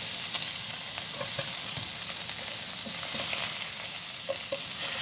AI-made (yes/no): no